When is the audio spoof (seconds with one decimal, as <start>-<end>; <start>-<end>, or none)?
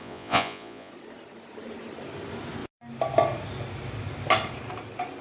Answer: 0.0-0.9